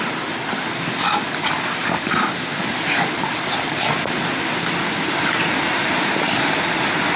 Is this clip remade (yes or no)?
no